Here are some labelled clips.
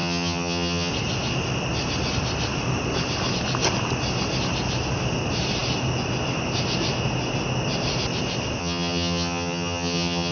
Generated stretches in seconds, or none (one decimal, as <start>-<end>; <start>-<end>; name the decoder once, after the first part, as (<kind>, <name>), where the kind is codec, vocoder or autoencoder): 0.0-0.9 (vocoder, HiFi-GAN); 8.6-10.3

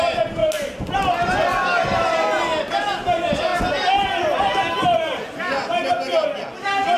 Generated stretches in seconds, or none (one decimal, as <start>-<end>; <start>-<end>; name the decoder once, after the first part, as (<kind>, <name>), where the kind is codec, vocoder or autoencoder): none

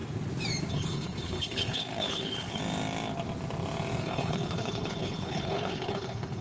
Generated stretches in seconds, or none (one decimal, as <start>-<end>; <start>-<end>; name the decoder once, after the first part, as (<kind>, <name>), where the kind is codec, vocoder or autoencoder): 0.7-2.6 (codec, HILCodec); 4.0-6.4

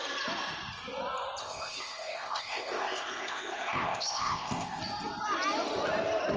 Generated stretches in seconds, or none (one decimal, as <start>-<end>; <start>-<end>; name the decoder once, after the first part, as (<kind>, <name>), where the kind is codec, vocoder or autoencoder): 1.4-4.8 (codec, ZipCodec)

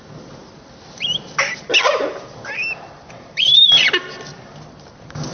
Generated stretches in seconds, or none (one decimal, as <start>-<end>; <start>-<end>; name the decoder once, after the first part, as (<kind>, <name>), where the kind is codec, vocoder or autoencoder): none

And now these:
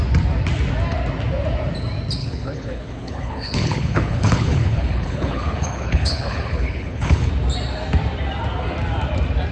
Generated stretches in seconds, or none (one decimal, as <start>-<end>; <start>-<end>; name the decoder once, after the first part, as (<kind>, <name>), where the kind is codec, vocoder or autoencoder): 2.2-7.3 (codec, HILCodec)

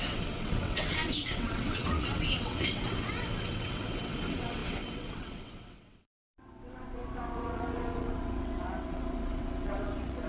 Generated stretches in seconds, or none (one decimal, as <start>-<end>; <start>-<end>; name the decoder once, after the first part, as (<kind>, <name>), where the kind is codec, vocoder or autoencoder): 0.0-10.3 (vocoder, WaveNeXt)